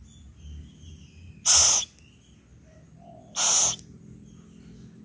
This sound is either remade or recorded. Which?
recorded